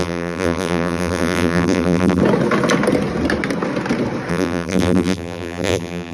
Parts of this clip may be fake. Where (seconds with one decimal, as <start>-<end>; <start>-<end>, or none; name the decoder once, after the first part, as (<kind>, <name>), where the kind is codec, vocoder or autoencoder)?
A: 0.0-2.2 (vocoder, BigVGAN v2); 4.3-6.1

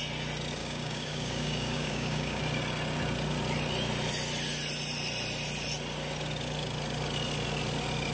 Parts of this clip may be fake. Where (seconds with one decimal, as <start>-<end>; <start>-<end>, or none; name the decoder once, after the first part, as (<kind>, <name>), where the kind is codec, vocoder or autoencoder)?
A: 0.6-2.4 (codec, DAC)

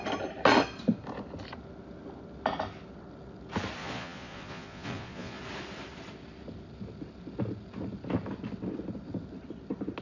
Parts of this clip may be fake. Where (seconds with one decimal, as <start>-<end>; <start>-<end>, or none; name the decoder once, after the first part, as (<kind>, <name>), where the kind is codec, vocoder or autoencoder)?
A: 3.8-5.4 (vocoder, Vocos)

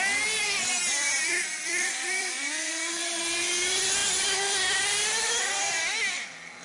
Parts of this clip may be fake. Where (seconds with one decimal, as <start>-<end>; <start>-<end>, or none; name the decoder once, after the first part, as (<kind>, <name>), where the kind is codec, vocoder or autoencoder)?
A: 1.2-2.7 (vocoder, BigVGAN v2); 4.0-5.5

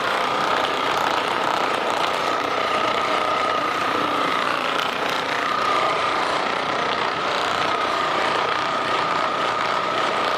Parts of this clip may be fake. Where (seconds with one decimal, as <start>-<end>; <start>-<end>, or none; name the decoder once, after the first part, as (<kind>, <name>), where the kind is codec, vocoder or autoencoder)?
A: 0.0-10.4 (vocoder, BigVGAN v2)